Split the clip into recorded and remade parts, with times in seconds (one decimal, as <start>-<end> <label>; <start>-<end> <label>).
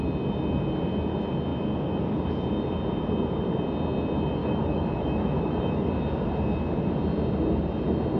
0.0-4.4 recorded; 4.4-5.9 remade; 5.9-8.2 recorded